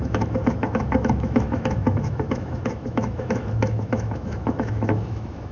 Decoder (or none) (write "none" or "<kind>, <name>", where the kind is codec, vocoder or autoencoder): autoencoder, DAC-VAE